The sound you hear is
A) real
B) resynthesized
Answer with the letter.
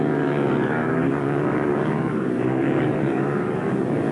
B